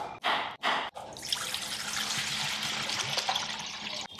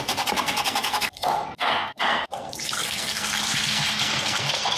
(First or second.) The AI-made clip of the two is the second